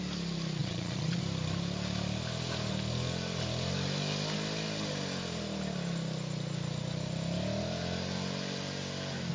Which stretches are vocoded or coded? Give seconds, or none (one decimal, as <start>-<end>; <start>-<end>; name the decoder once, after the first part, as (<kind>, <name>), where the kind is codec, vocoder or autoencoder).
0.6-1.2 (vocoder, Vocos)